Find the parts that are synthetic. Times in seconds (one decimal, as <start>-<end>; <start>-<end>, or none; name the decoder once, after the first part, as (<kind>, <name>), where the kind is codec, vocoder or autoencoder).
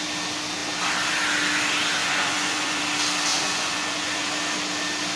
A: 2.0-2.8 (vocoder, Vocos); 3.3-4.3